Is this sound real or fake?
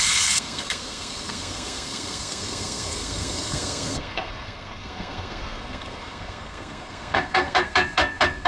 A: fake